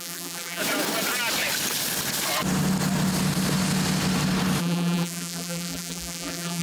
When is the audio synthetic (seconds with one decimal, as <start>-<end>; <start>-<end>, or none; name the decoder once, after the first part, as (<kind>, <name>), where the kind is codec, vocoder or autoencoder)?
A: 0.0-0.6 (vocoder, BigVGAN v2); 4.6-6.6

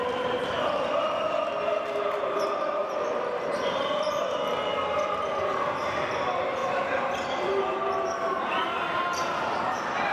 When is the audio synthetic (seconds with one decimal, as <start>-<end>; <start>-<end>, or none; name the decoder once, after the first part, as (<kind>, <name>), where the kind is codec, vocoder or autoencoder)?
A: none

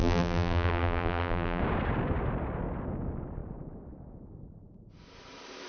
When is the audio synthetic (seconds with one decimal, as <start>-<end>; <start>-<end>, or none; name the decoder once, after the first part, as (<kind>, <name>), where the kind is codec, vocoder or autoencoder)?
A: 0.0-1.6 (vocoder, BigVGAN v2)

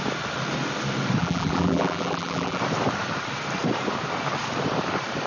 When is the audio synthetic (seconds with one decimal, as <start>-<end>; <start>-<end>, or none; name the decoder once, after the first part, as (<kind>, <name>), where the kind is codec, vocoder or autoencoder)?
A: 1.2-2.6 (vocoder, BigVGAN v2)